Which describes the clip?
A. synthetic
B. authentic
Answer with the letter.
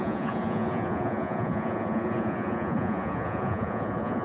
A